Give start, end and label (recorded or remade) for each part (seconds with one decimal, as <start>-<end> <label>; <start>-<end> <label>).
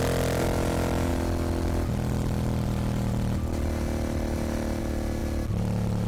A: 0.0-6.1 recorded